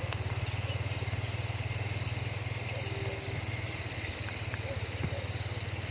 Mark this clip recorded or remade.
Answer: recorded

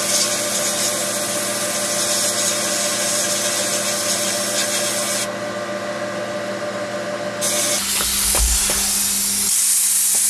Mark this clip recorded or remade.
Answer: recorded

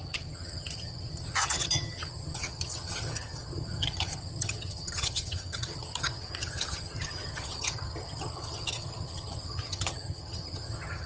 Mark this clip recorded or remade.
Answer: remade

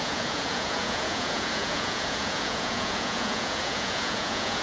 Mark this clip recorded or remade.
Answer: remade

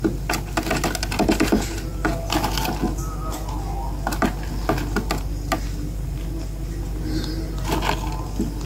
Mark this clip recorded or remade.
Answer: recorded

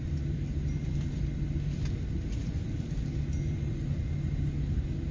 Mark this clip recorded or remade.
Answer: recorded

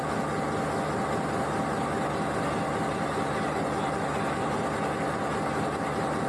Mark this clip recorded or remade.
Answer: recorded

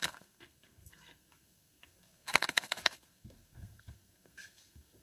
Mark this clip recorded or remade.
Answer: remade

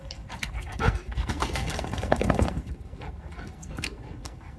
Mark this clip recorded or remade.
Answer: remade